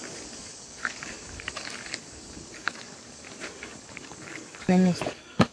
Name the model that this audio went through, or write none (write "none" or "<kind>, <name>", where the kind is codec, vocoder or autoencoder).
codec, DAC